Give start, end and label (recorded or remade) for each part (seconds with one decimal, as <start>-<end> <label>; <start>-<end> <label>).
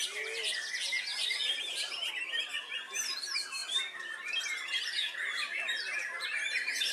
0.0-1.1 recorded; 1.1-2.1 remade; 2.1-5.3 recorded; 5.3-6.9 remade